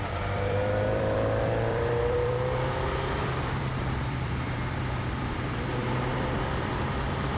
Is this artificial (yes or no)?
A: yes